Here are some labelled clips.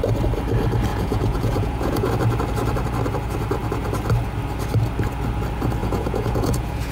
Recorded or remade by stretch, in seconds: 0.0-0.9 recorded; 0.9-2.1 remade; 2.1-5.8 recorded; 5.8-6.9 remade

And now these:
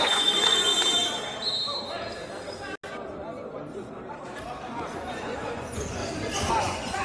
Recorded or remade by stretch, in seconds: 0.0-0.7 remade; 0.7-4.9 recorded; 4.9-6.0 remade; 6.0-6.5 recorded; 6.5-7.0 remade

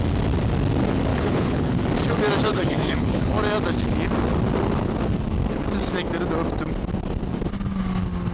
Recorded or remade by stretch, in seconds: 0.0-1.1 recorded; 1.1-1.8 remade; 1.8-2.5 recorded; 2.5-3.3 remade; 3.3-8.3 recorded

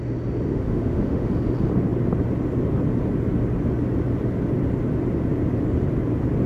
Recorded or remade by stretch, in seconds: 0.0-0.5 recorded; 0.5-1.3 remade; 1.3-6.5 recorded

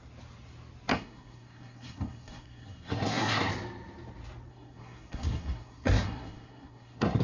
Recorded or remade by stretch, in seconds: 0.0-0.9 recorded; 0.9-3.5 remade; 3.5-4.5 recorded; 4.5-7.2 remade

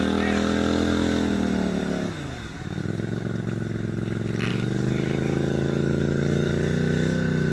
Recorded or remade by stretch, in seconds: 0.0-1.8 recorded; 1.8-2.8 remade; 2.8-4.5 recorded; 4.5-6.5 remade; 6.5-7.5 recorded

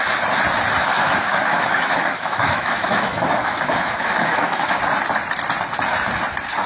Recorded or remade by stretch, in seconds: 0.0-0.8 recorded; 0.8-4.8 remade; 4.8-6.7 recorded

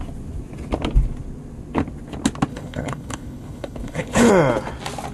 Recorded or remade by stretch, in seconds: 0.0-2.5 recorded; 2.5-4.3 remade; 4.3-5.1 recorded